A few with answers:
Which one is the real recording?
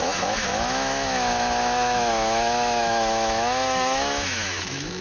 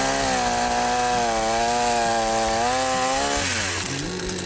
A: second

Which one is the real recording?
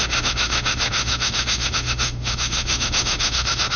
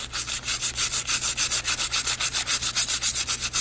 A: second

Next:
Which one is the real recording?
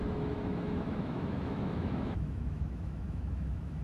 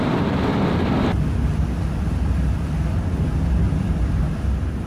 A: second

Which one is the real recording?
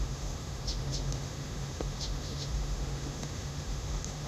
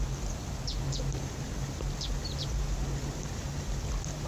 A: second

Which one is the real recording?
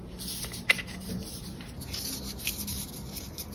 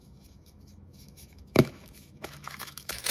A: first